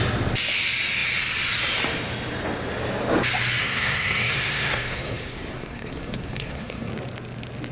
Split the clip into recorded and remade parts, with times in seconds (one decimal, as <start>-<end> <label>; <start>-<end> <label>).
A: 0.0-3.6 recorded; 3.6-6.9 remade; 6.9-7.7 recorded